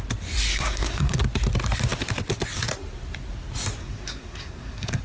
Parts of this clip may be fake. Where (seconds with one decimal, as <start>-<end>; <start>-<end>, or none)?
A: 0.5-1.2; 3.8-5.0